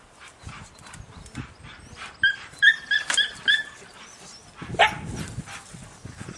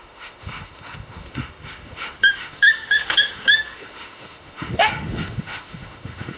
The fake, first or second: second